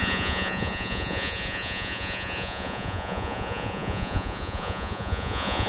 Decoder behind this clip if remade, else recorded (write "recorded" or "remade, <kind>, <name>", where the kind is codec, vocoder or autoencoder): remade, vocoder, Vocos